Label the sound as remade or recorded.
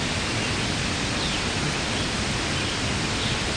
recorded